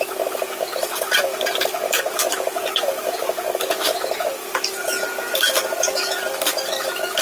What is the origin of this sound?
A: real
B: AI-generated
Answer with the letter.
B